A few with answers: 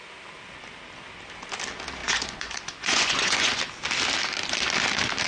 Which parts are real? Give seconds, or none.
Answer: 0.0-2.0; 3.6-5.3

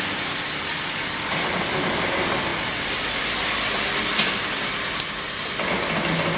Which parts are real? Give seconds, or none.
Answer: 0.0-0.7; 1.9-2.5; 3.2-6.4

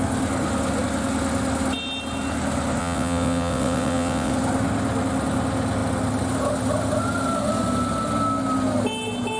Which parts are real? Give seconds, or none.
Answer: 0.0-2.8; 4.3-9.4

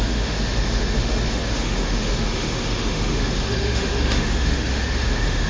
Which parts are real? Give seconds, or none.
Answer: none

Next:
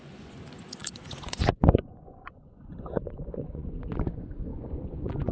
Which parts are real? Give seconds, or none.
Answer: none